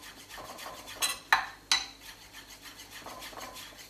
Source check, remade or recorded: recorded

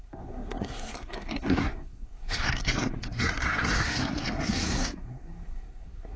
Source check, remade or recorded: remade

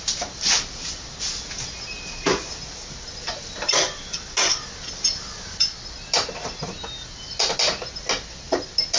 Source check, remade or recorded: recorded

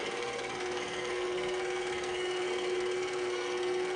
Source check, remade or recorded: remade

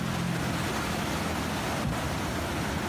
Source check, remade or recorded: recorded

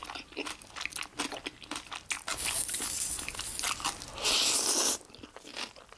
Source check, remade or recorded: recorded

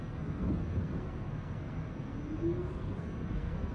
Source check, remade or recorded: remade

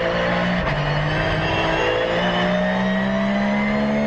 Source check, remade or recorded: recorded